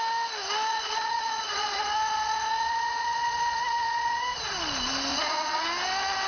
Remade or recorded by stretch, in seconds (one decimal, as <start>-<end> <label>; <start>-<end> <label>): 0.0-0.7 recorded; 0.7-4.5 remade; 4.5-5.1 recorded; 5.1-5.6 remade; 5.6-6.3 recorded

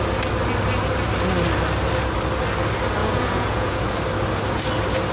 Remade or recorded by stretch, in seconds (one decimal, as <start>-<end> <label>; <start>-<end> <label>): 0.0-3.0 recorded; 3.0-3.9 remade; 3.9-5.1 recorded

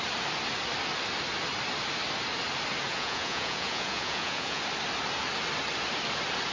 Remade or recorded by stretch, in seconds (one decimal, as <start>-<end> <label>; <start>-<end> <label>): 0.0-2.9 recorded; 2.9-4.6 remade; 4.6-6.5 recorded

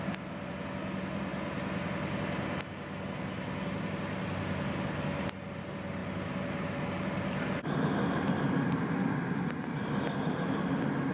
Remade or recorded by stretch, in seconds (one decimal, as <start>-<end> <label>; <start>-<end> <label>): 0.0-11.1 recorded

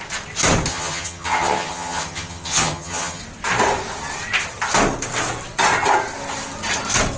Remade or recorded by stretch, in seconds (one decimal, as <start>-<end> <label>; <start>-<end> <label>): 0.0-0.7 recorded; 0.7-3.2 remade; 3.2-7.2 recorded